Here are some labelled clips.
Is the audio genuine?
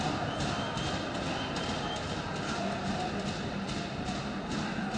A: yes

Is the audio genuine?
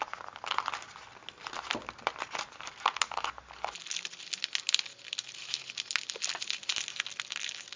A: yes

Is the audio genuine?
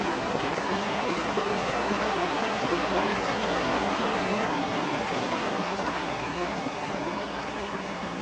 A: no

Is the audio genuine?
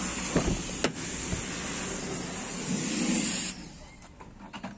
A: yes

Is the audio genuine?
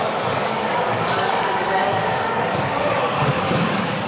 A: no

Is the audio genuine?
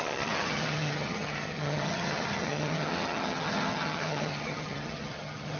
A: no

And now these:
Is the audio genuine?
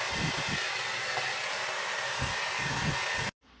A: yes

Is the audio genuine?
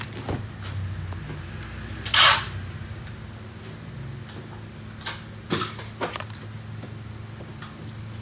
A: yes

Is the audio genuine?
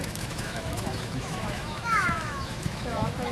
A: no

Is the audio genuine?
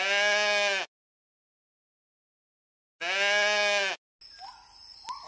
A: yes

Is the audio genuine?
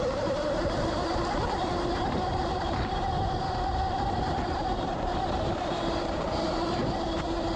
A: no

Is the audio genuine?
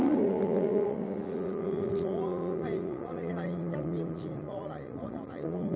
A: no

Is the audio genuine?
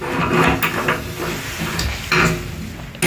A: yes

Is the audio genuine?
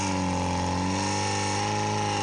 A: yes